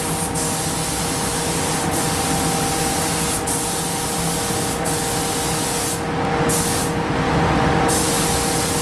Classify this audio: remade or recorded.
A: recorded